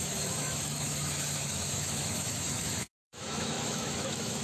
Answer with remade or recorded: remade